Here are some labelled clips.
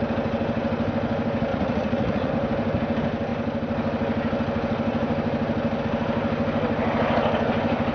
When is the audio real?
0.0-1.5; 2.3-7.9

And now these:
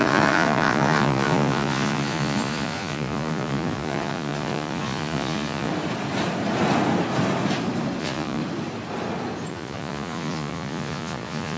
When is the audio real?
5.7-8.0; 8.4-9.5

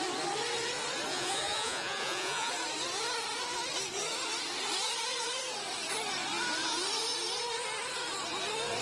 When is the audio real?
0.0-1.1; 2.5-8.8

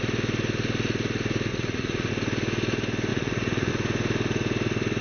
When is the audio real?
0.0-1.5; 2.1-3.1; 3.7-5.0

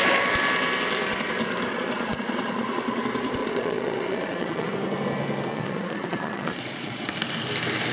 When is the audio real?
0.0-1.7; 3.0-3.4; 4.7-5.5; 7.1-7.9

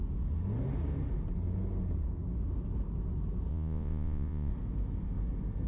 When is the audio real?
0.0-3.5; 4.5-5.7

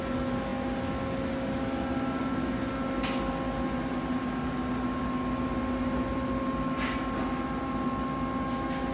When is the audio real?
0.0-8.9

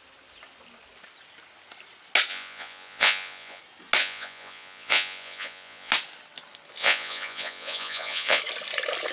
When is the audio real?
0.0-2.3; 3.6-4.0; 5.9-6.8; 8.4-9.1